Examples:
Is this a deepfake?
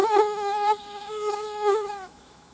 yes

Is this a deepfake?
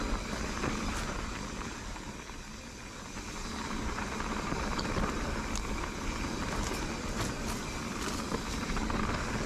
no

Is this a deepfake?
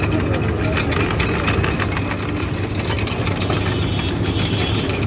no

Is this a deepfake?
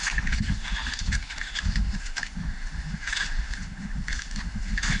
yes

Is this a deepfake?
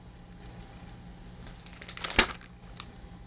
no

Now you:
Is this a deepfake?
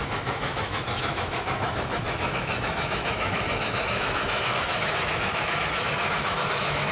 yes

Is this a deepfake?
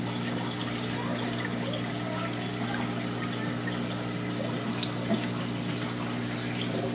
no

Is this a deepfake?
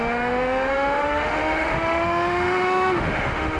yes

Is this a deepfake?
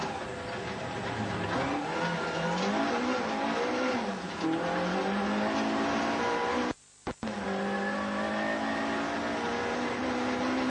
no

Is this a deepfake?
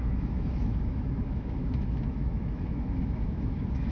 yes